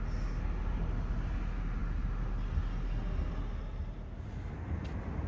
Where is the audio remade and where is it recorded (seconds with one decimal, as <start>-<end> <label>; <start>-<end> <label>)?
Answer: 0.0-5.3 recorded